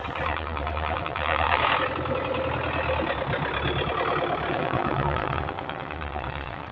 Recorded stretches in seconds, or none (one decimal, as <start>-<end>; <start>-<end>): 1.6-4.5